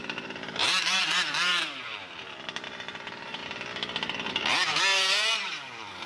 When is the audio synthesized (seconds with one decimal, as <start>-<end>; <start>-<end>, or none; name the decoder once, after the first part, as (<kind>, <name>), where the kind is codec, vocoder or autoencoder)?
0.0-3.4 (vocoder, BigVGAN v2); 4.3-6.1